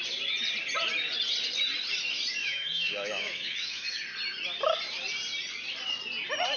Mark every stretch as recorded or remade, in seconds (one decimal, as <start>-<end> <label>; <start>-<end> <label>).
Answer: 0.0-2.4 recorded; 2.4-4.0 remade; 4.0-6.6 recorded